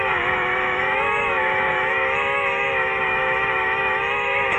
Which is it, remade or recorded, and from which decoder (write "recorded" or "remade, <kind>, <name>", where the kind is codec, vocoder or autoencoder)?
remade, autoencoder, DAC-VAE